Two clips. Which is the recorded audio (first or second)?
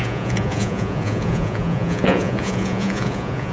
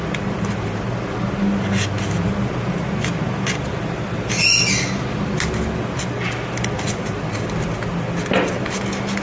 second